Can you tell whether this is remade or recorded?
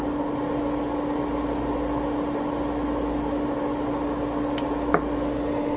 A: recorded